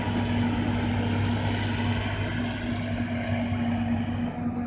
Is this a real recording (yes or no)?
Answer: yes